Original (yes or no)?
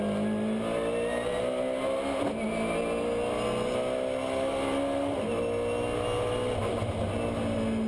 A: yes